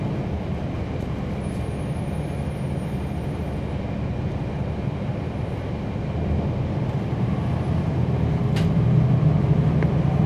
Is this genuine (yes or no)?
yes